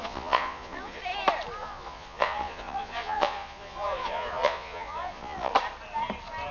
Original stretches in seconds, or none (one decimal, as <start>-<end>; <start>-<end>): 1.0-1.6; 5.5-6.5